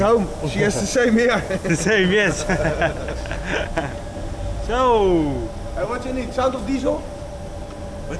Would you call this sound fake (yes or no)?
no